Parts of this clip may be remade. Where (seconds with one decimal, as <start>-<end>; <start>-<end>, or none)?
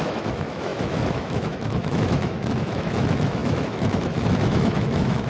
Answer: 0.0-5.3